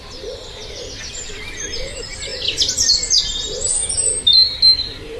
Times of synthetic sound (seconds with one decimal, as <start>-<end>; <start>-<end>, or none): none